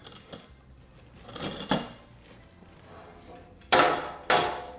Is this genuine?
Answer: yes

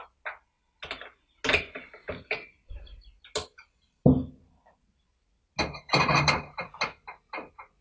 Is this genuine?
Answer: yes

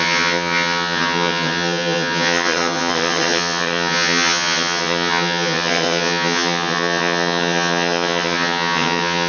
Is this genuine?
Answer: no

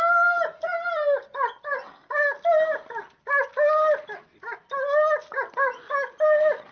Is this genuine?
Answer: yes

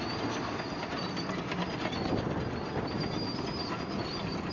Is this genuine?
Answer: yes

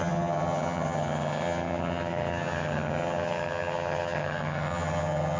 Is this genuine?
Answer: no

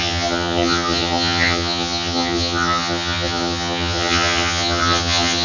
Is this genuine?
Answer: no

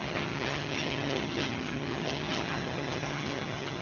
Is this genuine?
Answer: no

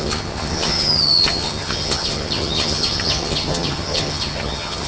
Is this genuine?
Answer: no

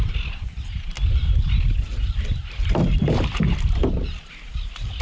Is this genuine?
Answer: yes